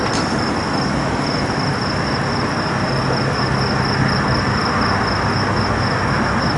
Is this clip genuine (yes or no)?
yes